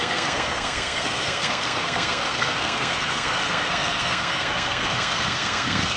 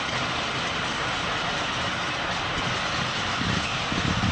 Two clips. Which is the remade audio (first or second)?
first